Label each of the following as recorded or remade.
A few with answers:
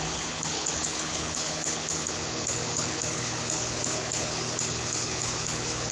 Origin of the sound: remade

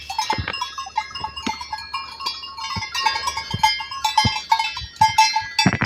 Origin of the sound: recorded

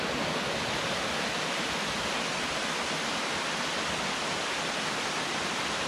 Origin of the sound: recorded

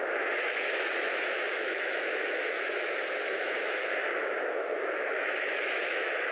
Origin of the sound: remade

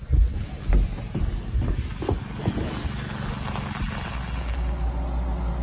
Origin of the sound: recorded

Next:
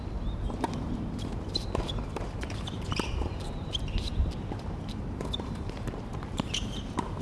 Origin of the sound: remade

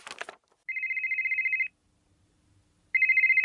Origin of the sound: recorded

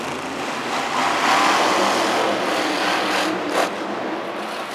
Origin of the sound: recorded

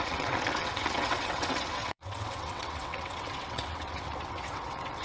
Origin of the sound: remade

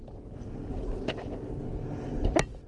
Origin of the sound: recorded